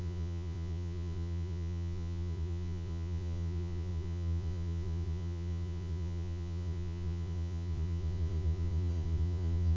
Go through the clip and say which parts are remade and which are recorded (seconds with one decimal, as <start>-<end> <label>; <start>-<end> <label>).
0.0-9.8 remade